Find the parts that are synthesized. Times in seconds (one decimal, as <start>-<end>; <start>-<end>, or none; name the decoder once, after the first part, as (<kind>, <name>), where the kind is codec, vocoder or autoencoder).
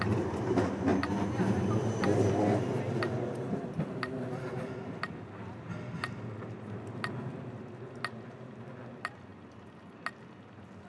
none